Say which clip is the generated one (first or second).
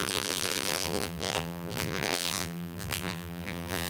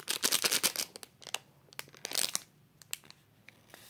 first